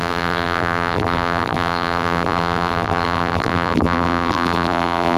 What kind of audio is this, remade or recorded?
remade